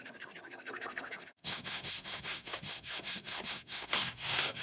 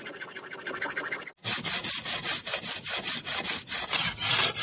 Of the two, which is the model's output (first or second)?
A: first